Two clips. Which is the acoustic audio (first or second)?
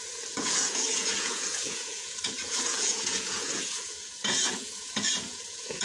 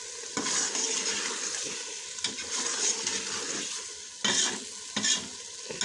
second